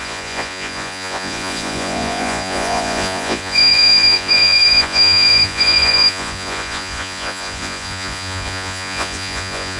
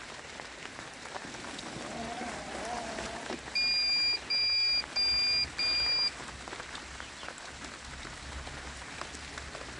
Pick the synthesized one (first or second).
first